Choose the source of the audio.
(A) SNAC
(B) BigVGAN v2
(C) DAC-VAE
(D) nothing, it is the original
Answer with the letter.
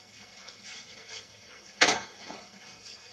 A